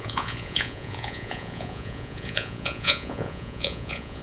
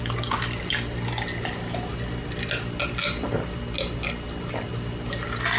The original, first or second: second